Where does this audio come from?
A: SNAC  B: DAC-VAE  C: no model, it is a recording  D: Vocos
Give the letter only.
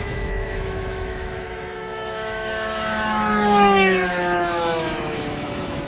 B